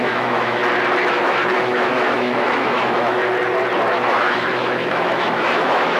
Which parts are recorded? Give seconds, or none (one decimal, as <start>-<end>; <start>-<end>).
0.6-1.1; 3.2-4.1